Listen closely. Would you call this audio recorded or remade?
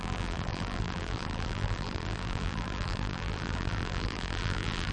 remade